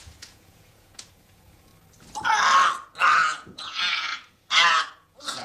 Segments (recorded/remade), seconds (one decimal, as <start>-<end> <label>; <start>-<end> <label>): 0.0-1.7 remade; 1.7-3.1 recorded; 3.1-5.4 remade